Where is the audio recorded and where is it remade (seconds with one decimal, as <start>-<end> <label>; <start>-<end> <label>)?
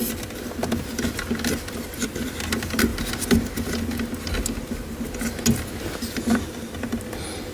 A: 0.0-7.5 recorded